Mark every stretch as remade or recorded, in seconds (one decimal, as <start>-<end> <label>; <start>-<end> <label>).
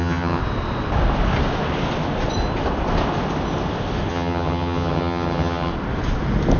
0.0-0.4 remade; 0.4-4.1 recorded; 4.1-5.7 remade; 5.7-6.6 recorded